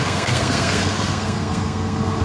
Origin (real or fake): fake